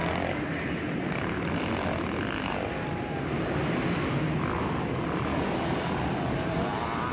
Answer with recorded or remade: recorded